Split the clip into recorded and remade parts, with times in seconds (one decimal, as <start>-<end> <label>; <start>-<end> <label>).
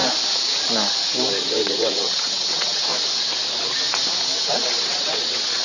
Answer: 0.0-1.4 recorded; 1.4-2.9 remade; 2.9-4.5 recorded; 4.5-5.6 remade